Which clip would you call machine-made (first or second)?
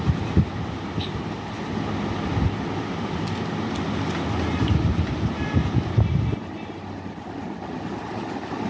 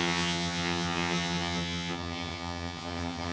second